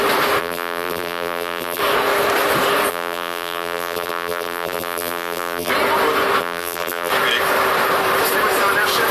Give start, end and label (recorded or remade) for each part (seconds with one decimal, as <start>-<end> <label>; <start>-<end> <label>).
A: 0.0-0.4 recorded; 0.4-1.8 remade; 1.8-2.9 recorded; 2.9-5.7 remade; 5.7-6.4 recorded; 6.4-7.1 remade; 7.1-9.1 recorded